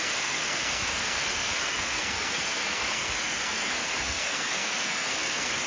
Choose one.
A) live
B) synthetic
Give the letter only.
B